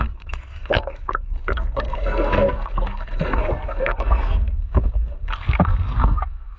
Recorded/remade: remade